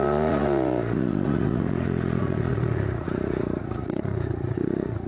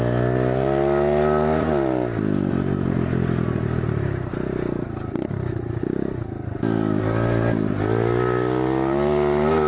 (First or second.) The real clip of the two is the second